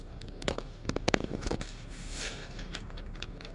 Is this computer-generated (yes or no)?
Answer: yes